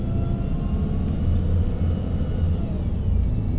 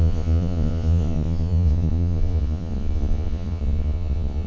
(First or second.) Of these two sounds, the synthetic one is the second